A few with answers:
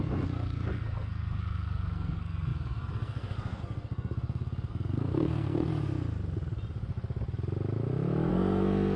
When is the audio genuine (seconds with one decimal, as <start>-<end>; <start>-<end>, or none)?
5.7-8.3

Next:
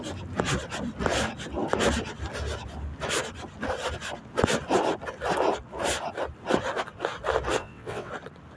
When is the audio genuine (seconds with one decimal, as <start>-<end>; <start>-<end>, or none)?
0.0-7.6; 8.1-8.6

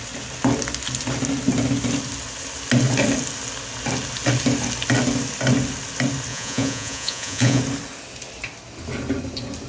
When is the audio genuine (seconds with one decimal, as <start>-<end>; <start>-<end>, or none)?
0.0-6.3; 7.6-9.7

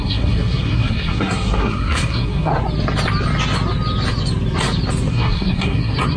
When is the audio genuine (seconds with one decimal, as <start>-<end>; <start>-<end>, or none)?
2.5-5.1